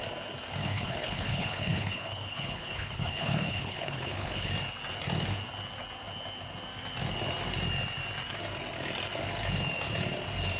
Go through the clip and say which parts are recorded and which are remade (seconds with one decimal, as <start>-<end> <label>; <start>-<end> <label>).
0.0-0.6 recorded; 0.6-4.5 remade; 4.5-10.6 recorded